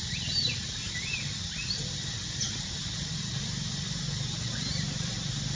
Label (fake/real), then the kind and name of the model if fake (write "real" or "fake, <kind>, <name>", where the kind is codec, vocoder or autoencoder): real